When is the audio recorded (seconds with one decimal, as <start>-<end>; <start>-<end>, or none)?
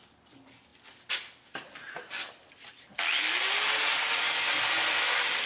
0.0-5.5